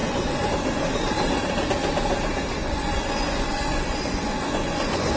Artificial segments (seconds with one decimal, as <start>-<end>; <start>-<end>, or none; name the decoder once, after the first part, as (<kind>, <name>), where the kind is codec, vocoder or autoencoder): 0.0-0.5 (vocoder, Vocos); 2.6-5.2

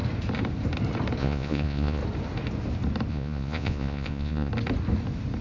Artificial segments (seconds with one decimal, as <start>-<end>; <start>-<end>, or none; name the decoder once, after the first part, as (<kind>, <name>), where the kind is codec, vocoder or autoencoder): 1.2-2.0 (vocoder, Vocos); 3.1-4.5

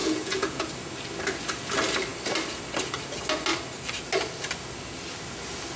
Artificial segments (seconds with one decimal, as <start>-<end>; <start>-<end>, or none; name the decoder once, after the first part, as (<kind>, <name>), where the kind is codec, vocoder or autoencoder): 0.0-0.7 (vocoder, Vocos)

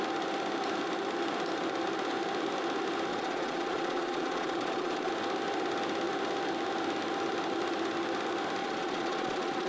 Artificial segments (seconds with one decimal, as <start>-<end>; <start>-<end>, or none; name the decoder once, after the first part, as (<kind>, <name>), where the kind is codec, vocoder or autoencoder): 3.1-5.1 (vocoder, Vocos); 8.6-9.7

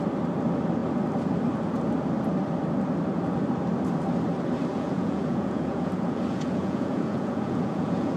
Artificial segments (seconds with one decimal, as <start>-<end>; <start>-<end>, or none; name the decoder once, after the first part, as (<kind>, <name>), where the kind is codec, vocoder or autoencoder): 4.7-8.2 (vocoder, Vocos)

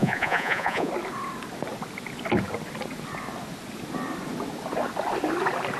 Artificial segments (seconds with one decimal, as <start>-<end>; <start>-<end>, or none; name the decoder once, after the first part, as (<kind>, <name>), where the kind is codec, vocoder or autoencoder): 0.0-0.9 (vocoder, Vocos)

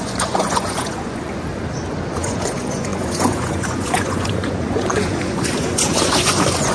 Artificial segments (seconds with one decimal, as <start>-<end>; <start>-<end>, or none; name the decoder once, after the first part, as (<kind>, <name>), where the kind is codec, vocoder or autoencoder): 0.0-1.5 (vocoder, Vocos); 2.1-6.7

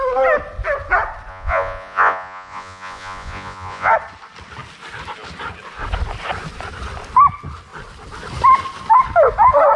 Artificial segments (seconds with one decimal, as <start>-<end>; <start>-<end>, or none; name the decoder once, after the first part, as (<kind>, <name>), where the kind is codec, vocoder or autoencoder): 1.3-3.9 (vocoder, Vocos)